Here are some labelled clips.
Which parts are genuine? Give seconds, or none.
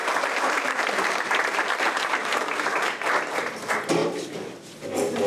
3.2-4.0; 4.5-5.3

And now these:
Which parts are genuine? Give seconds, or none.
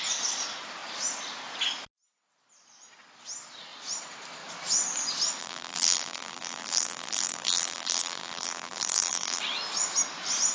0.0-5.4; 9.4-10.5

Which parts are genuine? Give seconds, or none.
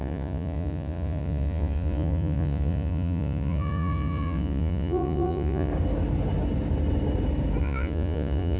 5.7-7.6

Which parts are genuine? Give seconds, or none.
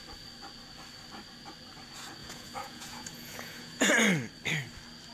0.0-2.2; 3.9-5.1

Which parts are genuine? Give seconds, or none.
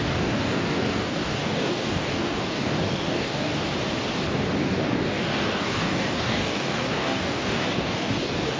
3.5-4.6